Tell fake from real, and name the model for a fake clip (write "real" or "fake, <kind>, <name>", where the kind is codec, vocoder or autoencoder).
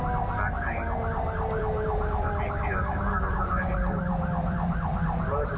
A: fake, vocoder, BigVGAN v2